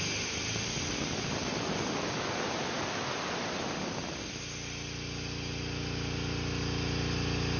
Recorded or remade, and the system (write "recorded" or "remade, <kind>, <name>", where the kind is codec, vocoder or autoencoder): recorded